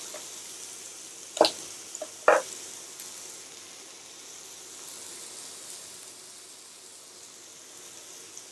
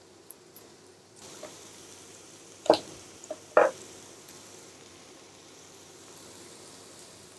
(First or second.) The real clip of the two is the first